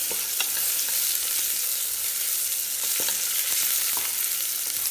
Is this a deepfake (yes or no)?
no